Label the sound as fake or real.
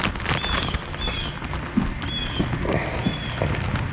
real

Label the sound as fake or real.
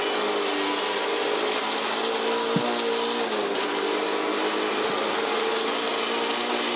real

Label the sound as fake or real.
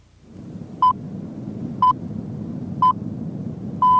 real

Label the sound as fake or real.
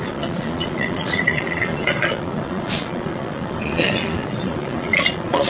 fake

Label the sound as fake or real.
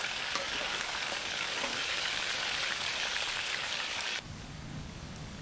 fake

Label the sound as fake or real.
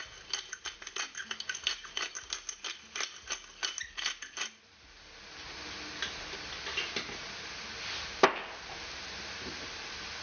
real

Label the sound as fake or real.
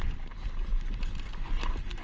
real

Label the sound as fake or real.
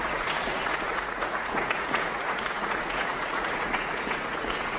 fake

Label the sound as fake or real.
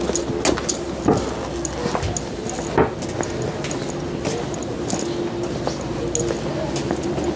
real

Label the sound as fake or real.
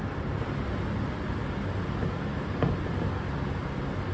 real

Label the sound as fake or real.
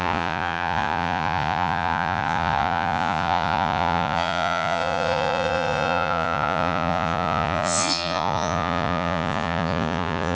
fake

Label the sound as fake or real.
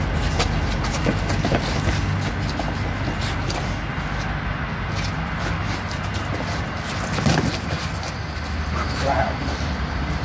real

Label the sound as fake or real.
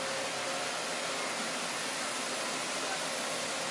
real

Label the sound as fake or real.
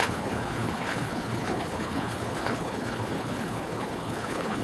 fake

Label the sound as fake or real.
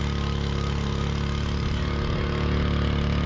real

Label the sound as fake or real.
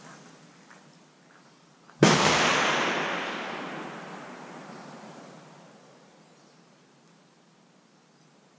real